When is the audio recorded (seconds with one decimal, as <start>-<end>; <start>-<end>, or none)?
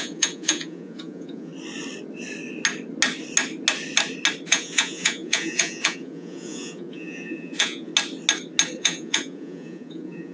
1.5-4.5; 7.9-8.8